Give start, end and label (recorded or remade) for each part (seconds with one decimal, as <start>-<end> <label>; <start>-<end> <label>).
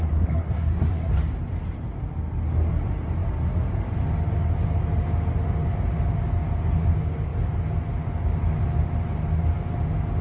0.0-1.1 remade; 1.1-10.2 recorded